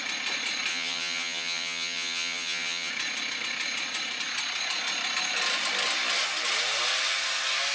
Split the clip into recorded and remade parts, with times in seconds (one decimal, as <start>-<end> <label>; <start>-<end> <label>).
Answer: 0.0-0.7 recorded; 0.7-2.9 remade; 2.9-7.7 recorded